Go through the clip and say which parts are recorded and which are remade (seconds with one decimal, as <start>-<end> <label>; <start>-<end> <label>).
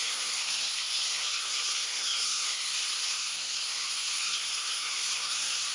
0.0-5.7 remade